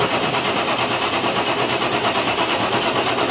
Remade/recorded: recorded